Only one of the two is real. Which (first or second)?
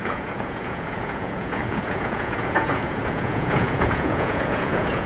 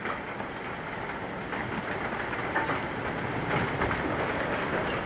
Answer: second